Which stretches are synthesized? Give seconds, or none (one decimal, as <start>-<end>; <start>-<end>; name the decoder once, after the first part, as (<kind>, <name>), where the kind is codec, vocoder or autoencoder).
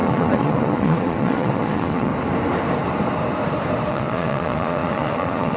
0.0-2.1 (vocoder, Vocos); 3.9-5.6